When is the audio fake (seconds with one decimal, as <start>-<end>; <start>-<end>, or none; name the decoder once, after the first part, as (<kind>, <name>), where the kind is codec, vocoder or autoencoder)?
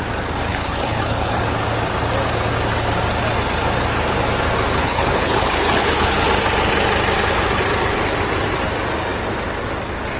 0.5-1.4 (codec, HILCodec); 4.8-6.2